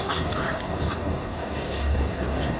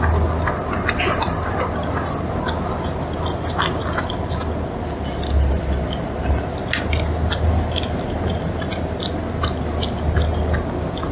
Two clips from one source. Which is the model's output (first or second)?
first